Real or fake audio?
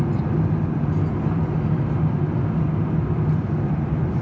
real